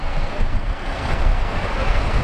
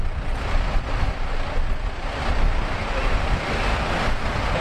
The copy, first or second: first